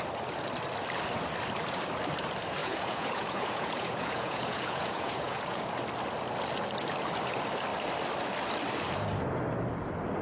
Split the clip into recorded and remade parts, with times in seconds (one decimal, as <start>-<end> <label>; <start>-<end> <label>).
0.0-2.6 recorded; 2.6-5.7 remade; 5.7-10.2 recorded

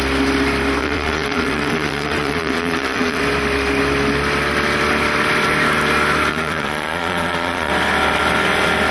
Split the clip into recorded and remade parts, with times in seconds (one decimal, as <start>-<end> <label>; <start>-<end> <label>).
0.0-0.8 recorded; 0.8-3.2 remade; 3.2-6.3 recorded; 6.3-7.7 remade; 7.7-8.9 recorded

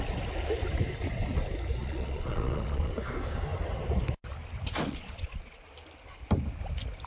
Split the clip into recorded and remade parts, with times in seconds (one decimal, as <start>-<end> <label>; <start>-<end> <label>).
0.0-1.8 recorded; 1.8-2.9 remade; 2.9-4.9 recorded; 4.9-5.6 remade; 5.6-7.1 recorded

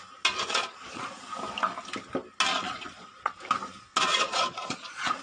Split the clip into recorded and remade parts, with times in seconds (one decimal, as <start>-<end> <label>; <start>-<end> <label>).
0.0-0.6 recorded; 0.6-1.2 remade; 1.2-2.5 recorded; 2.5-3.4 remade; 3.4-3.9 recorded; 3.9-5.2 remade

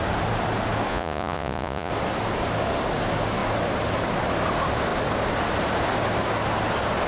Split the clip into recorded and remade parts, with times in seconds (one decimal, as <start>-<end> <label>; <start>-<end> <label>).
0.0-0.9 recorded; 0.9-1.9 remade; 1.9-7.1 recorded

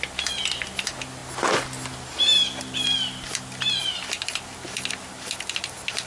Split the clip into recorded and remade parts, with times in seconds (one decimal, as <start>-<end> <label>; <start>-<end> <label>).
0.0-6.1 recorded

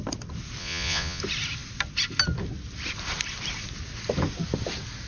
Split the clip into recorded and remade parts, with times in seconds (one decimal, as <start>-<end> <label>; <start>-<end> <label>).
0.0-0.6 recorded; 0.6-1.2 remade; 1.2-5.1 recorded

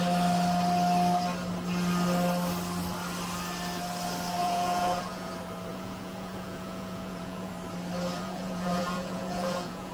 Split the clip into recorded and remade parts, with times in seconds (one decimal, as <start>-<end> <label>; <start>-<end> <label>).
0.0-4.4 recorded; 4.4-5.3 remade; 5.3-5.7 recorded; 5.7-7.5 remade; 7.5-8.1 recorded; 8.1-9.9 remade